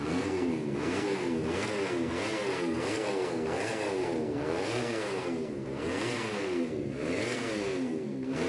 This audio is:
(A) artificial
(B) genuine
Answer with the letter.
A